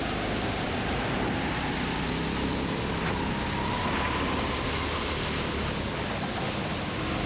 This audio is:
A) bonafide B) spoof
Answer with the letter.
A